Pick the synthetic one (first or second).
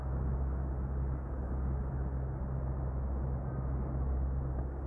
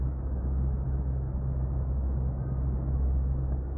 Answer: second